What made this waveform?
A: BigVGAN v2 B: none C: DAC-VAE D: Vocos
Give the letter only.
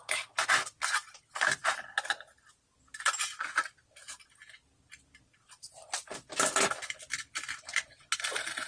B